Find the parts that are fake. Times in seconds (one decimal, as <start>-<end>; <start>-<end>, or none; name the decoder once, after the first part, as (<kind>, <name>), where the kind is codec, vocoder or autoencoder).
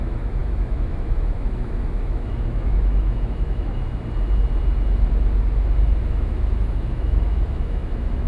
0.0-3.8 (autoencoder, DAC-VAE); 6.0-8.3